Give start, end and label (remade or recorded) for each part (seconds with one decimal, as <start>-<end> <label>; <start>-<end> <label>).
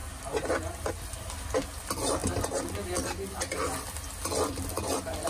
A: 0.0-5.3 recorded